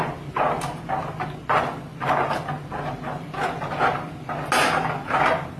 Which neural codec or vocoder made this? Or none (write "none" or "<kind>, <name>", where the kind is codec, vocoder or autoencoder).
none